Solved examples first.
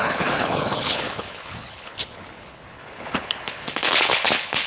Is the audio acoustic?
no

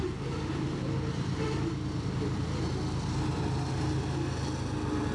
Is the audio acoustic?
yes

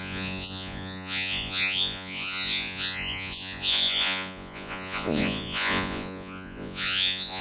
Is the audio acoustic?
no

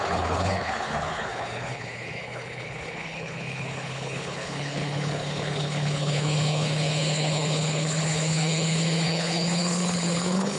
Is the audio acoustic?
no